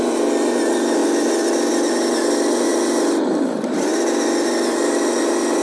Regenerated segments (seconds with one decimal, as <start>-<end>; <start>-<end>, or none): none